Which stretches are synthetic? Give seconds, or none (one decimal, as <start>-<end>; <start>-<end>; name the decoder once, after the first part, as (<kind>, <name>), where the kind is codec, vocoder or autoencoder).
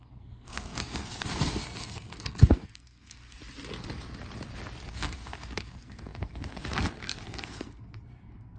0.0-3.4 (codec, SNAC); 4.9-8.6